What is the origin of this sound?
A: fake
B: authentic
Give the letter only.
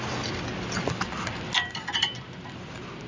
B